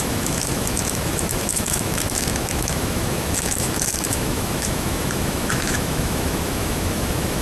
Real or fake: fake